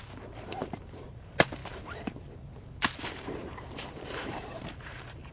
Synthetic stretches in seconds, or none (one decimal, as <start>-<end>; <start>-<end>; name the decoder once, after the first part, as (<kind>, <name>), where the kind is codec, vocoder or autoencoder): 0.0-5.3 (vocoder, BigVGAN v2)